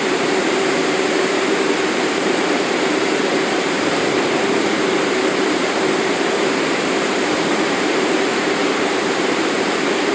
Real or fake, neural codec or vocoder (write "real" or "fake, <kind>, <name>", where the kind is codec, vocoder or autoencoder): fake, vocoder, BigVGAN v2